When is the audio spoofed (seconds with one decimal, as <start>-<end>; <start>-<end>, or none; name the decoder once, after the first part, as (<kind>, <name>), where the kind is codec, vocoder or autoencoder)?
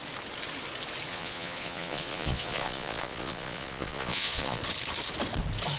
1.1-4.6 (vocoder, Vocos)